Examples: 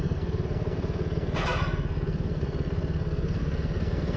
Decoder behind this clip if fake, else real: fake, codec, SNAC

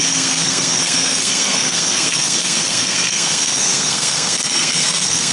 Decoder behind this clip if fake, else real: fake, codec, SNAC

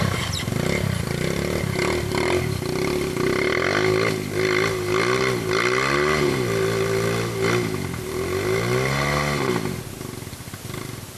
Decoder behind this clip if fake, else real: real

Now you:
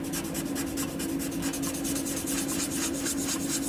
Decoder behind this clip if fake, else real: real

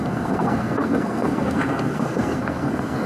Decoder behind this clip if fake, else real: fake, codec, SNAC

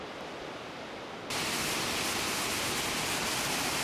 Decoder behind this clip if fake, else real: real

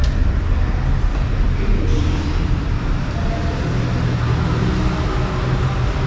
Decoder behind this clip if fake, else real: real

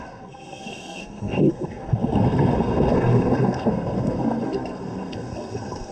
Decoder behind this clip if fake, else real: fake, codec, SNAC